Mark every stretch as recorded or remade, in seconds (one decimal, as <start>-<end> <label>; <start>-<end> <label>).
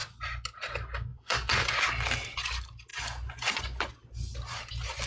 0.0-1.1 recorded; 1.1-1.8 remade; 1.8-2.9 recorded; 2.9-3.9 remade; 3.9-5.1 recorded